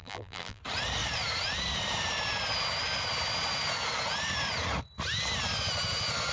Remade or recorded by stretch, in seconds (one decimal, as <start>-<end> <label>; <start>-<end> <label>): 0.0-0.6 remade; 0.6-6.3 recorded